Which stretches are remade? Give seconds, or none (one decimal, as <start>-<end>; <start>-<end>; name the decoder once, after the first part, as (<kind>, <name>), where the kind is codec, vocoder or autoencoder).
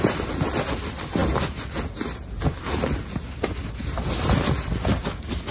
none